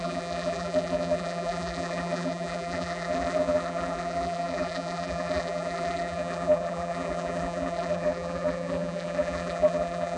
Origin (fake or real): fake